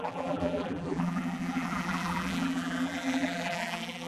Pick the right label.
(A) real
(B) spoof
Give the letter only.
B